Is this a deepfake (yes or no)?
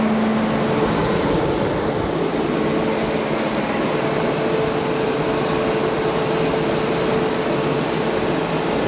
no